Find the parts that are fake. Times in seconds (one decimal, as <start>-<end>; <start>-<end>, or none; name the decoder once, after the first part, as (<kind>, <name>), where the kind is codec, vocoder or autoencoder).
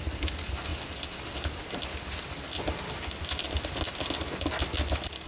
none